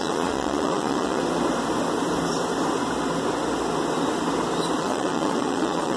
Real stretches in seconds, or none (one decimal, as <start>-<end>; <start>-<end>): 1.2-4.8